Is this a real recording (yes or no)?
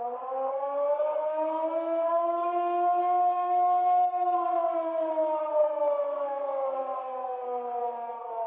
no